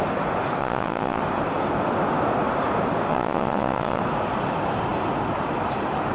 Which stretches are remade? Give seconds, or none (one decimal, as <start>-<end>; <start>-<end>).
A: 0.6-1.2; 3.1-4.0